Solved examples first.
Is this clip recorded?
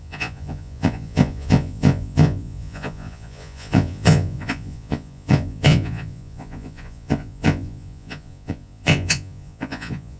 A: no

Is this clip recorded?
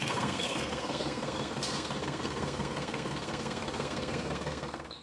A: no